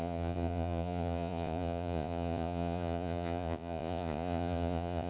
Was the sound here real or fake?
fake